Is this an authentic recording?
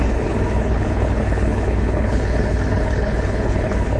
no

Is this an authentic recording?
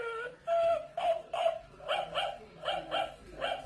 yes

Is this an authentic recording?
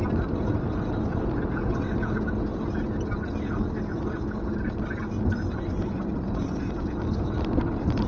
yes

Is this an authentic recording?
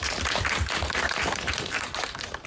no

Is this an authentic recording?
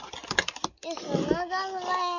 yes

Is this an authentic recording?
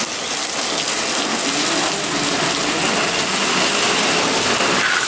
yes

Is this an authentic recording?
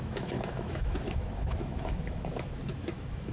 no